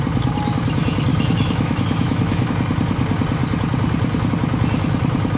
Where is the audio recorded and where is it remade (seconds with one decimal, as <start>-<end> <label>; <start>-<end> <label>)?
0.0-1.1 recorded; 1.1-2.5 remade; 2.5-5.4 recorded